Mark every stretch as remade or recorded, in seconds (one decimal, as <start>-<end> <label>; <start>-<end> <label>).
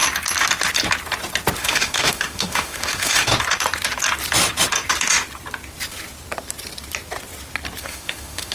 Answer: 0.0-1.6 recorded; 1.6-3.3 remade; 3.3-7.8 recorded; 7.8-8.5 remade